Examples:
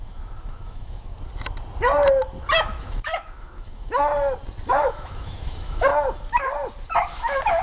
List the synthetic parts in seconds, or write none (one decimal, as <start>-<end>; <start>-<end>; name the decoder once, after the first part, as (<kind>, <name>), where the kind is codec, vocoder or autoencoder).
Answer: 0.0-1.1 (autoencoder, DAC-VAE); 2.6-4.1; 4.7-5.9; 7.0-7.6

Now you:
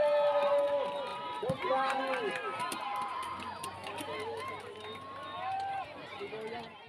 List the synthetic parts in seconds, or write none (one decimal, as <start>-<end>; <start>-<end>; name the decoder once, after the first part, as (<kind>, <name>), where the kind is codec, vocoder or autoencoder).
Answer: none

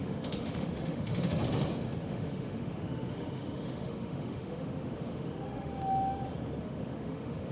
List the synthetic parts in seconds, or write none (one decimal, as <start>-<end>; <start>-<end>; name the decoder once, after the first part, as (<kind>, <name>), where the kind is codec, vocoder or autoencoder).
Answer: 0.0-1.4 (autoencoder, DAC-VAE); 2.1-5.7; 6.6-7.5